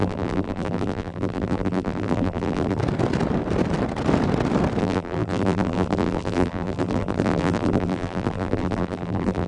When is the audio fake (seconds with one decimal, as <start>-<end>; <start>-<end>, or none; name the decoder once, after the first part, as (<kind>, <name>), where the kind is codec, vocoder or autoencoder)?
0.0-2.8 (vocoder, BigVGAN v2); 4.8-9.5